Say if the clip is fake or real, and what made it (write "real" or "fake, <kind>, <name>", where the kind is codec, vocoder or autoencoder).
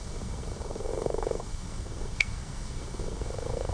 fake, codec, SNAC